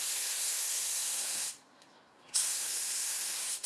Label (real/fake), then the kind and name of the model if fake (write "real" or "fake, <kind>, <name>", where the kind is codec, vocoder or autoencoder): fake, codec, SNAC